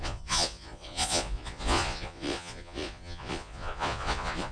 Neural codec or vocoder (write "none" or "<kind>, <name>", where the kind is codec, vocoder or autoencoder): vocoder, Vocos